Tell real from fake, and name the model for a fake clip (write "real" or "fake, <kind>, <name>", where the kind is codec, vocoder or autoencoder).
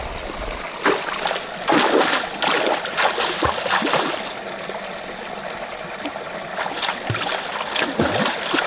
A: real